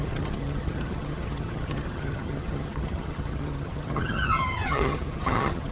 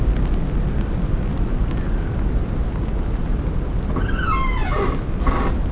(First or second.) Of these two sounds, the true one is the second